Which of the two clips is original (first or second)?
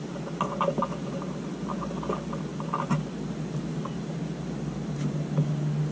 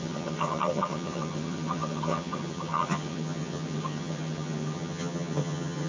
first